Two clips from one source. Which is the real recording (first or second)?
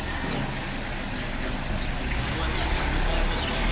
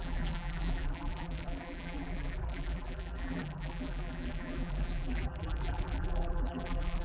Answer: first